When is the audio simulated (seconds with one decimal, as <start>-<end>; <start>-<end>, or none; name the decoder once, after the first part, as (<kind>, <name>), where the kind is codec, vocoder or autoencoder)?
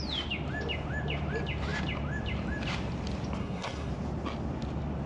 3.4-3.9 (codec, SNAC)